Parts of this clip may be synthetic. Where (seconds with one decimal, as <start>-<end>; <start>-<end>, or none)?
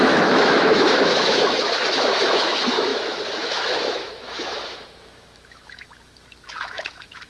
0.0-7.3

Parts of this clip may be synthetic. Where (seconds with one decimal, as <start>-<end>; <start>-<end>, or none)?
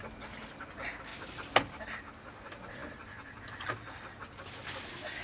none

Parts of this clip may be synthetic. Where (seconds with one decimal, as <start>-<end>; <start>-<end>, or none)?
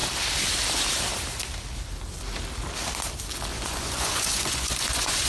3.5-5.3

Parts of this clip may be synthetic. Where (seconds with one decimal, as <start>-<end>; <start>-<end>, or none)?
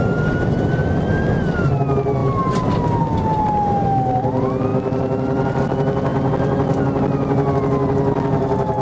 none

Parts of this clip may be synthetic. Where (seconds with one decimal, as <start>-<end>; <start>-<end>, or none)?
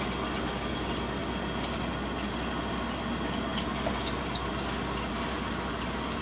none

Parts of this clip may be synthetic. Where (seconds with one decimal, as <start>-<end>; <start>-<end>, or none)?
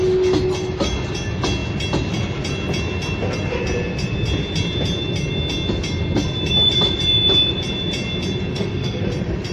8.5-9.0